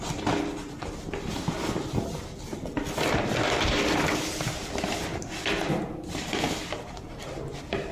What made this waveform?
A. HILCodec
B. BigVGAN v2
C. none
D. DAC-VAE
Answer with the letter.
C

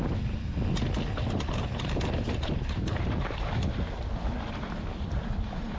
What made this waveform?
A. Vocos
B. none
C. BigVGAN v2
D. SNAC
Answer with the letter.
B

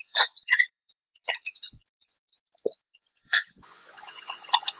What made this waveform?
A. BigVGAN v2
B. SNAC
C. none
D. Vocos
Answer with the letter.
D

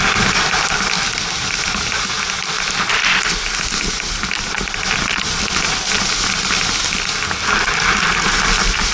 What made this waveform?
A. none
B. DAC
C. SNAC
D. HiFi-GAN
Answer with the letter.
A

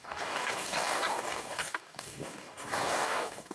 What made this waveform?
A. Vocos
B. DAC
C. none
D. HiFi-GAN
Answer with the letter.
B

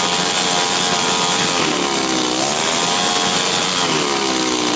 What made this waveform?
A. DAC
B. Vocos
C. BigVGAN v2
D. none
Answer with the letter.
D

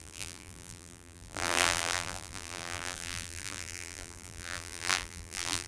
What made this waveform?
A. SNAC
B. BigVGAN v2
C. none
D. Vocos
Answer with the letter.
B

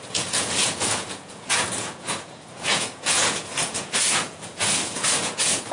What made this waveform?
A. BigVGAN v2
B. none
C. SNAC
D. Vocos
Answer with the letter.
D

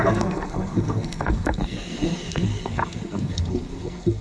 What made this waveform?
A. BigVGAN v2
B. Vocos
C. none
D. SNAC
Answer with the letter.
D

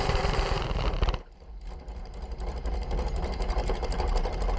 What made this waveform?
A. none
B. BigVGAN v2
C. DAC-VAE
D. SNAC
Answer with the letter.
B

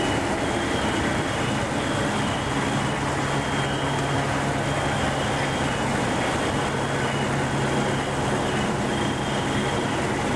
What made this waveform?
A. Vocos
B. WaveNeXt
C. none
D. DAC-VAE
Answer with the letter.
C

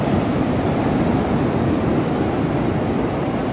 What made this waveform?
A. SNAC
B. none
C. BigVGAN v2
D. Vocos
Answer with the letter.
C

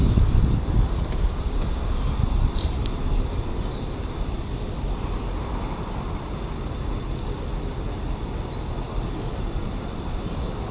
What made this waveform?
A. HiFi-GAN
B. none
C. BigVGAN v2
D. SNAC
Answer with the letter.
B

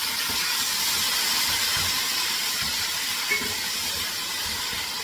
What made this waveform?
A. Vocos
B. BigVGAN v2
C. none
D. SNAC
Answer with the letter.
B